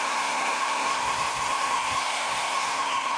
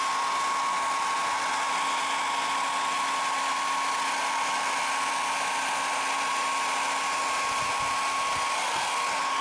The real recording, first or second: second